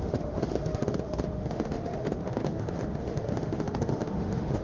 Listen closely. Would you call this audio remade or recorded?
remade